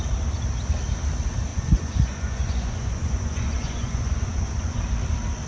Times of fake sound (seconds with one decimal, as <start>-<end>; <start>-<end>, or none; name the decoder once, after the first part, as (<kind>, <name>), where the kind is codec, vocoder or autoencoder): 1.5-4.8 (vocoder, Vocos)